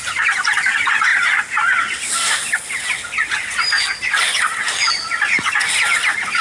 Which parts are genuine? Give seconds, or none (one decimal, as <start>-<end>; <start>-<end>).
0.0-6.4